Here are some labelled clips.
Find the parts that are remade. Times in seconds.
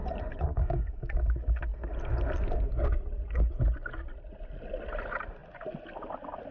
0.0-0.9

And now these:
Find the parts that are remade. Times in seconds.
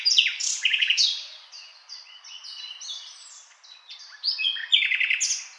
0.4-2.6; 4.2-4.8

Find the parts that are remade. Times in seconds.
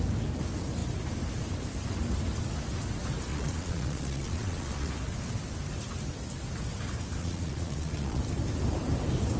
3.3-4.9; 7.2-8.2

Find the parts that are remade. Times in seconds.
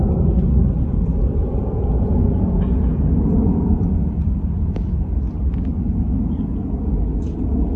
1.5-4.2